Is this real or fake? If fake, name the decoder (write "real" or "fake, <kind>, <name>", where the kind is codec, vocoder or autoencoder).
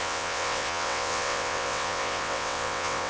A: fake, vocoder, WaveNeXt